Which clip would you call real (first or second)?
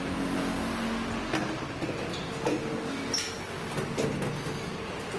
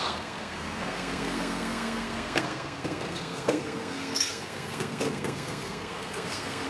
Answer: first